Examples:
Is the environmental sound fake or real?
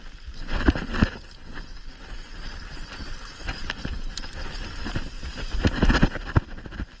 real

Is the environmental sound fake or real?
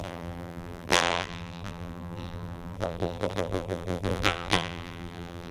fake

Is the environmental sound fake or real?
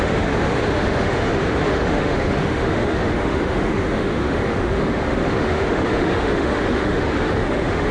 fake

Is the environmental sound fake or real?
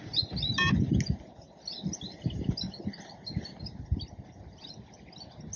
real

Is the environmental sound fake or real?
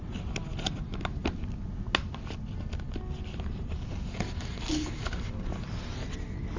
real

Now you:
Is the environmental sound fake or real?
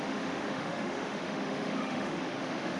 fake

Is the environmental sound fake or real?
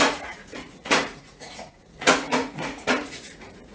fake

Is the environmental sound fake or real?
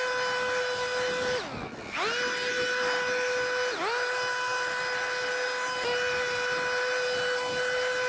real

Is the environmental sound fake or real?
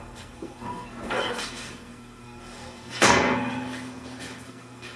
fake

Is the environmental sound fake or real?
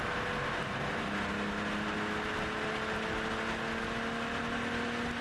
real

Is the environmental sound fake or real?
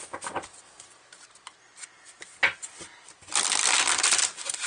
real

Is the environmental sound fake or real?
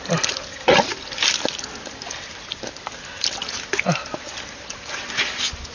real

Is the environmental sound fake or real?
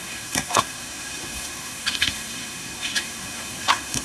fake